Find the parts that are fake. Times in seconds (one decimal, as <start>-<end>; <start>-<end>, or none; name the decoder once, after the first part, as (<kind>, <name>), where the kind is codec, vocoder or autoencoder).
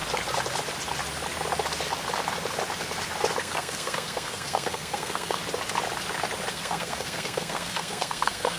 3.4-5.4 (codec, SNAC); 6.5-8.6